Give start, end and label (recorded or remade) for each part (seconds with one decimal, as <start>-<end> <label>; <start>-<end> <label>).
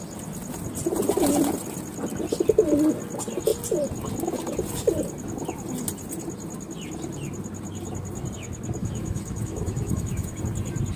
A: 0.0-8.8 recorded; 8.8-10.4 remade; 10.4-11.0 recorded